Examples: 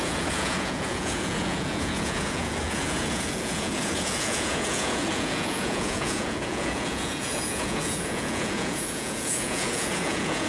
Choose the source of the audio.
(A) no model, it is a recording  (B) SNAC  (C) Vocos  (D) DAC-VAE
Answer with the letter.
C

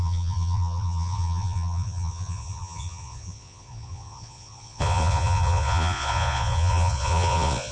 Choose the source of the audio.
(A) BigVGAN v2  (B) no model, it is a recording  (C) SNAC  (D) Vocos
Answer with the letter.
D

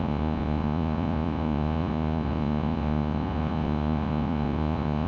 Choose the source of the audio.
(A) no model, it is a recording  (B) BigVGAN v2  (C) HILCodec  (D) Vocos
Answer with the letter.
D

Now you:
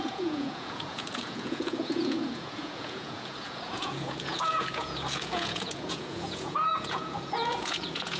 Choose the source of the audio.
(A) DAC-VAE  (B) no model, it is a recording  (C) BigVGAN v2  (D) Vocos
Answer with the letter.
D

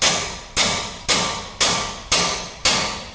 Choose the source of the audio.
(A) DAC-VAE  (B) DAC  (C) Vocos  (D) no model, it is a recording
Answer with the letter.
D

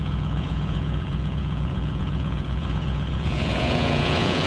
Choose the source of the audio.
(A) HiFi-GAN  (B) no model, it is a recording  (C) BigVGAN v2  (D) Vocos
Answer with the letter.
D